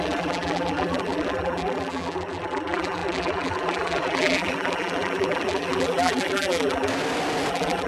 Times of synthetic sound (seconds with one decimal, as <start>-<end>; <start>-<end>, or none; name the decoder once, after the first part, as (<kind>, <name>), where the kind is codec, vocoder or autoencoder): 0.0-6.9 (vocoder, BigVGAN v2); 7.5-7.9